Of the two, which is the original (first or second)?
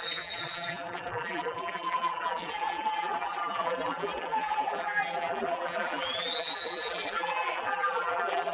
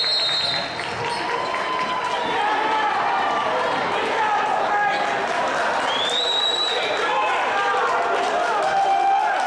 second